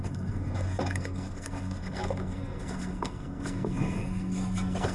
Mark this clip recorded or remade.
remade